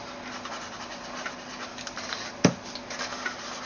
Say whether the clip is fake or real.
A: real